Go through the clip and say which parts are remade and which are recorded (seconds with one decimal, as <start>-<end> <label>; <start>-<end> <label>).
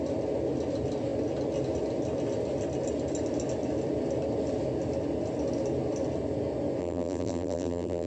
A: 0.0-6.8 recorded; 6.8-8.1 remade